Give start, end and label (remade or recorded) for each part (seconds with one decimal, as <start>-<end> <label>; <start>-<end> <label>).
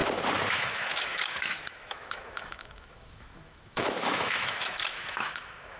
0.0-0.5 recorded; 0.5-5.8 remade